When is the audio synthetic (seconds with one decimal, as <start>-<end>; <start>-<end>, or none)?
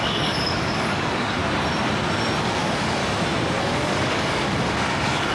0.0-1.4; 2.4-3.0; 3.6-5.3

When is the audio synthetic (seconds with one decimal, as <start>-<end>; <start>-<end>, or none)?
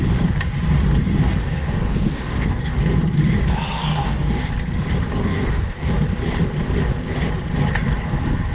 1.3-2.8; 3.8-4.5; 5.3-5.9